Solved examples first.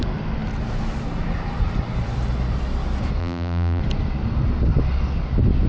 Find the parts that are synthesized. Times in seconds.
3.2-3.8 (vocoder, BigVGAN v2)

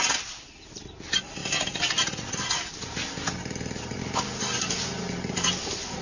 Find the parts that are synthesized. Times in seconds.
none